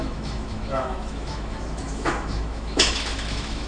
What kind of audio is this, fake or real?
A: fake